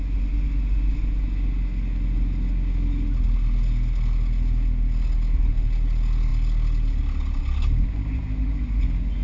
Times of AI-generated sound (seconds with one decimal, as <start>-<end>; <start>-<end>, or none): none